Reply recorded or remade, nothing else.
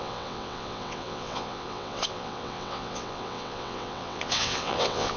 remade